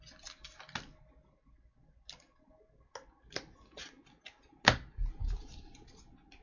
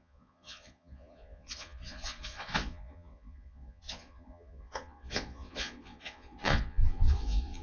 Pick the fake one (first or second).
second